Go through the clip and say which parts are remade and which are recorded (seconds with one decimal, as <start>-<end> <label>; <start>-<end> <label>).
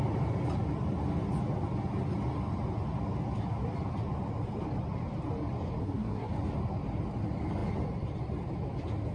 0.0-5.8 recorded; 5.8-6.3 remade; 6.3-9.1 recorded